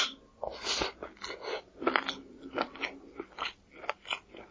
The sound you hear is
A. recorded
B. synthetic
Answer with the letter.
A